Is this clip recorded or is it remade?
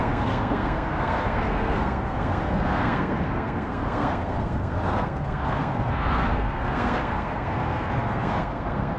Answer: remade